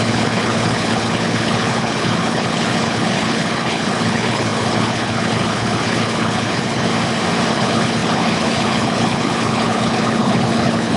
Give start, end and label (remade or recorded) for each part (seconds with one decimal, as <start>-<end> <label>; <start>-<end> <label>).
0.0-6.9 remade; 6.9-7.5 recorded; 7.5-11.0 remade